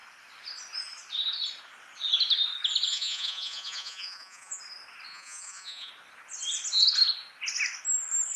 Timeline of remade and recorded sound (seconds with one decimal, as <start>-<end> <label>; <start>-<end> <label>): 0.0-2.9 recorded; 2.9-4.6 remade; 4.6-5.1 recorded; 5.1-5.9 remade; 5.9-8.4 recorded